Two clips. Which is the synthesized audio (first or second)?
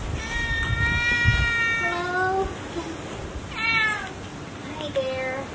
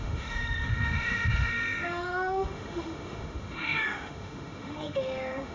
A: second